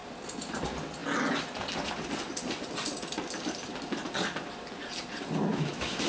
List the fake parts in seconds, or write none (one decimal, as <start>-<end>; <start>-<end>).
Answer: 5.5-6.1